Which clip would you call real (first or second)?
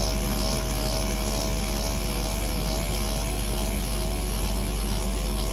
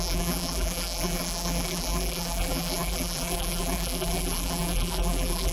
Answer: first